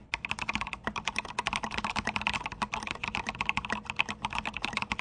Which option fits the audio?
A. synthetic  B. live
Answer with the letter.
B